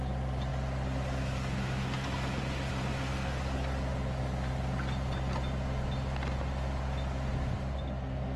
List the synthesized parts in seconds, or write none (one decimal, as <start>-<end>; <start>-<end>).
none